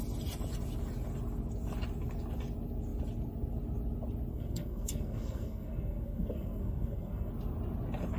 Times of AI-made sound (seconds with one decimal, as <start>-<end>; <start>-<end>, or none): 4.3-7.3